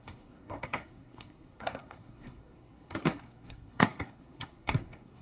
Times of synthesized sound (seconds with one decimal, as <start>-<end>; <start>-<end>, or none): 0.0-5.2